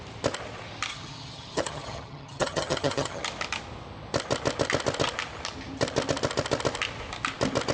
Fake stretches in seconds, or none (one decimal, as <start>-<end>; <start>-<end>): 0.9-3.2